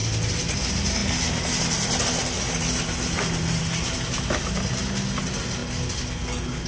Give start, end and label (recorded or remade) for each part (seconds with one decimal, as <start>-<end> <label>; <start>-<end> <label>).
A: 0.0-0.6 remade; 0.6-1.0 recorded; 1.0-3.6 remade; 3.6-6.7 recorded